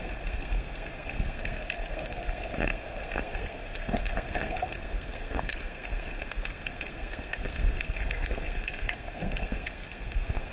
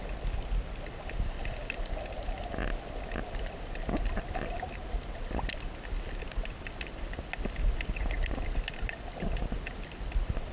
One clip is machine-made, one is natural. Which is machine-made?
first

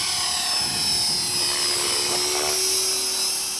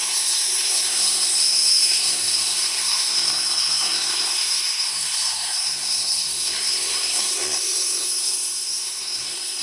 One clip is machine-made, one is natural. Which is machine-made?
second